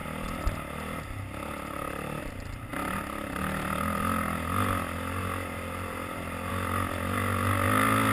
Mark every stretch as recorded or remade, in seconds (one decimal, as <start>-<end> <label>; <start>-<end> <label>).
0.0-8.1 recorded